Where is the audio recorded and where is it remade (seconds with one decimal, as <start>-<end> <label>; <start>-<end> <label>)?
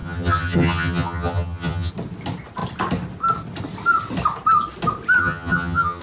0.0-1.9 remade; 1.9-5.2 recorded; 5.2-6.0 remade